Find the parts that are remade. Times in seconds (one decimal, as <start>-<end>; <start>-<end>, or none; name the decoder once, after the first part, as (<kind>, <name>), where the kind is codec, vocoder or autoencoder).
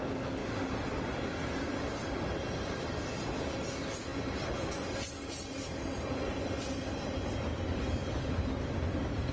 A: none